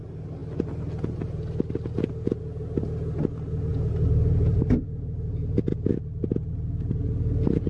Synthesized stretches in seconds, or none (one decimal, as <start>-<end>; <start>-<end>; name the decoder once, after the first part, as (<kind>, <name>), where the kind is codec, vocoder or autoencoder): 3.7-4.7 (vocoder, Vocos)